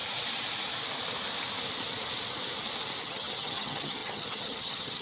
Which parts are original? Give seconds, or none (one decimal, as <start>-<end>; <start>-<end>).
0.0-3.0